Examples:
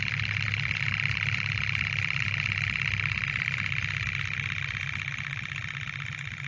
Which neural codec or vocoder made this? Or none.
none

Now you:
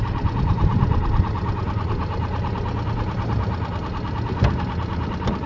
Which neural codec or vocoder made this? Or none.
none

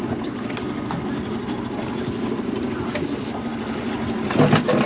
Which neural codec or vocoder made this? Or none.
none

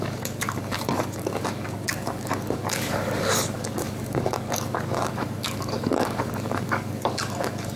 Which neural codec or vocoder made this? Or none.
codec, DAC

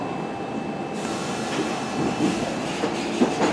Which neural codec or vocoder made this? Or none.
none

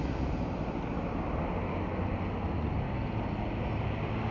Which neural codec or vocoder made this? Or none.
none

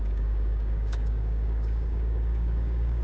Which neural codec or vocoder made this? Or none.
codec, DAC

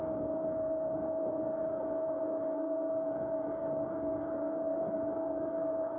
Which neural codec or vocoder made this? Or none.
codec, DAC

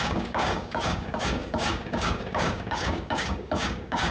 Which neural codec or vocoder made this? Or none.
codec, DAC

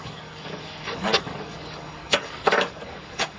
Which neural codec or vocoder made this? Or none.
codec, DAC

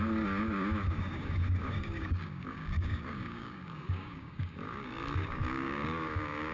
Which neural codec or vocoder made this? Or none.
codec, DAC